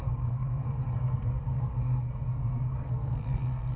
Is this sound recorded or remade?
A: remade